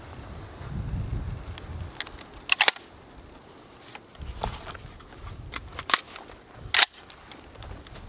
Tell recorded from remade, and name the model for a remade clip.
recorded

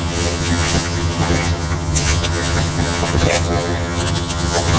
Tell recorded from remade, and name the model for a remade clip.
remade, vocoder, HiFi-GAN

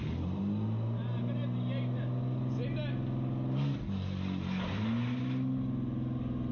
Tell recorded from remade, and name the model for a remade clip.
recorded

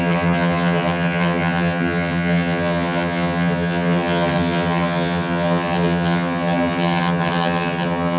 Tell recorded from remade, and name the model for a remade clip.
remade, vocoder, HiFi-GAN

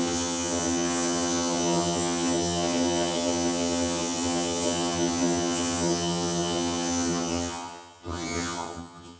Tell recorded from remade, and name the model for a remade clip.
remade, vocoder, HiFi-GAN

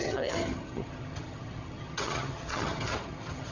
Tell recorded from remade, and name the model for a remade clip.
remade, vocoder, HiFi-GAN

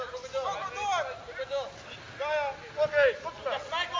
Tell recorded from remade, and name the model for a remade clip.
recorded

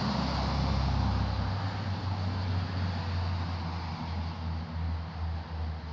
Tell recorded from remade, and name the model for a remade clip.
recorded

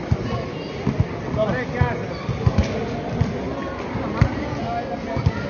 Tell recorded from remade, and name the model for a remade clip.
recorded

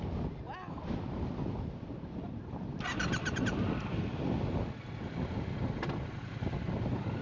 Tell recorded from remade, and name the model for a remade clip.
recorded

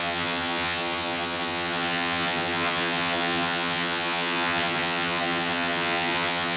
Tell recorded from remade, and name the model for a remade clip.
remade, vocoder, HiFi-GAN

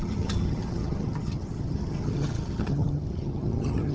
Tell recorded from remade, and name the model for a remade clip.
remade, vocoder, HiFi-GAN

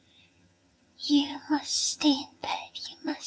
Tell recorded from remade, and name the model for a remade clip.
remade, vocoder, HiFi-GAN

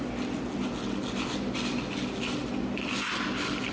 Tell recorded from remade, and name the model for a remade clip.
recorded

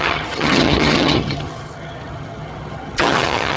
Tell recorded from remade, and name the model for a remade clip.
remade, vocoder, HiFi-GAN